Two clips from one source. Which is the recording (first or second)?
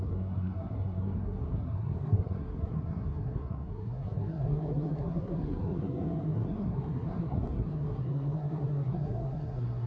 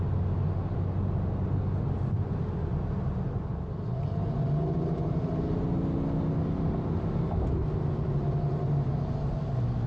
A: second